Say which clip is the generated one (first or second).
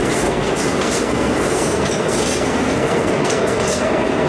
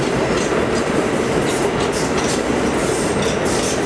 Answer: first